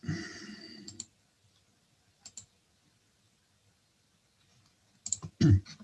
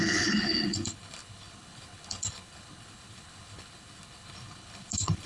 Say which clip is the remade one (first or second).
second